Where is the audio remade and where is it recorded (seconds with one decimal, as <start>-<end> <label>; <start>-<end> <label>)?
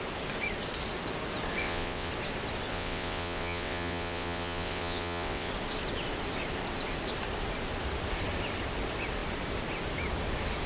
0.0-1.6 recorded; 1.6-2.1 remade; 2.1-2.7 recorded; 2.7-5.5 remade; 5.5-10.7 recorded